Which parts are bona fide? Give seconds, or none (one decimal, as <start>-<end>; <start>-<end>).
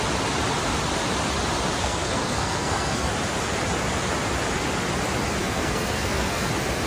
0.0-1.8; 3.1-5.4; 6.5-6.9